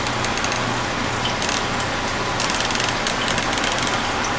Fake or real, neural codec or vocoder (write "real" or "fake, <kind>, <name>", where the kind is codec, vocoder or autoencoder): real